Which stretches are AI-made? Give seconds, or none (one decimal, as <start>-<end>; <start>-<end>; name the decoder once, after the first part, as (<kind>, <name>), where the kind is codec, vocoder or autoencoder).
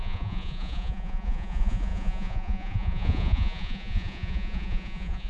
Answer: 0.0-5.3 (vocoder, Vocos)